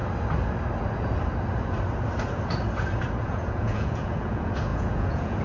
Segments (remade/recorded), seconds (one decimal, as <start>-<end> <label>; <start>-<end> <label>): 0.0-3.2 recorded; 3.2-5.4 remade